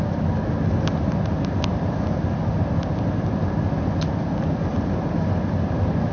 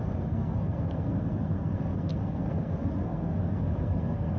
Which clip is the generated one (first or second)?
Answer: second